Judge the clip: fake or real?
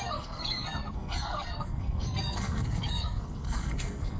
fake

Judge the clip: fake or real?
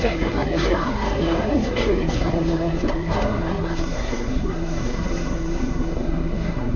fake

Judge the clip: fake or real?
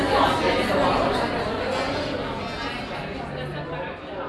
real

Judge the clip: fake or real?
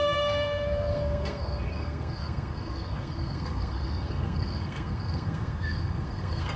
fake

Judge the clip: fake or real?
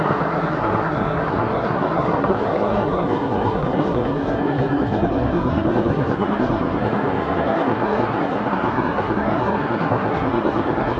fake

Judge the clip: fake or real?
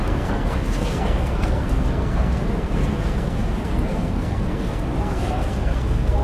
fake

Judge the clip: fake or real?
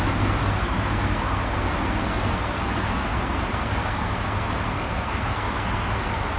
fake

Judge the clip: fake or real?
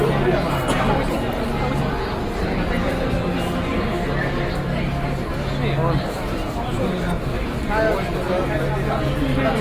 real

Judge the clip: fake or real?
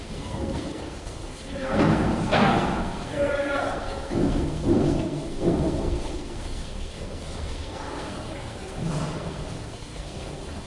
fake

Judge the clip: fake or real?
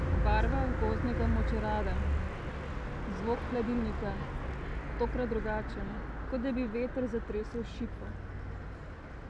real